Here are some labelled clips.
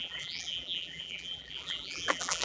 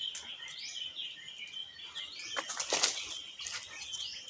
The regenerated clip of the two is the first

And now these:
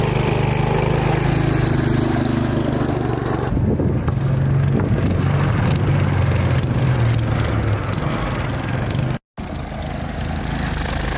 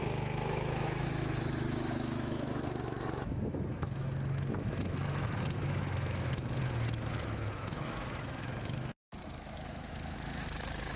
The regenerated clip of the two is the second